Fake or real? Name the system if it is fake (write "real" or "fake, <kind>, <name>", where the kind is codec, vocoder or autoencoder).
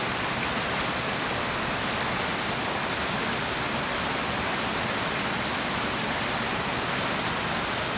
real